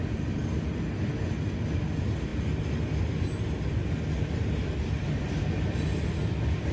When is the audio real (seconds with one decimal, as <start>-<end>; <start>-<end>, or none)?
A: 0.0-6.7